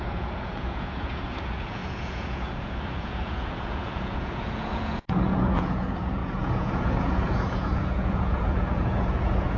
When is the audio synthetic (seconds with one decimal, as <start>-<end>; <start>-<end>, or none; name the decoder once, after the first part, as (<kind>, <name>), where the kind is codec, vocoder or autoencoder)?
0.0-9.6 (vocoder, Vocos)